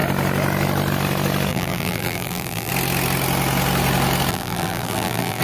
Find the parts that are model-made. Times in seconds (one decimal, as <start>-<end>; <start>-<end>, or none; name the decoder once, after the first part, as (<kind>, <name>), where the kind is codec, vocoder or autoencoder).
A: 1.5-2.7 (vocoder, BigVGAN v2); 4.3-5.4